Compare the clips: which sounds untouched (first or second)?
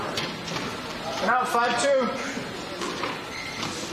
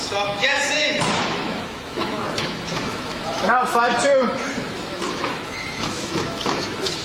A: first